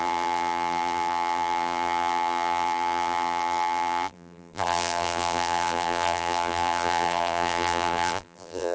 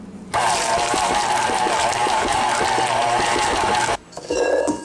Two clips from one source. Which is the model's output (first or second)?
first